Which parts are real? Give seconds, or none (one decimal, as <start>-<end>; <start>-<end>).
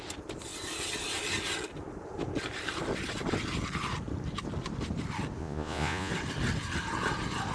0.0-5.4; 6.1-7.5